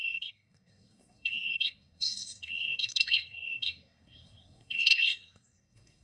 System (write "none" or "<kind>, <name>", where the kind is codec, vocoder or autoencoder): codec, SNAC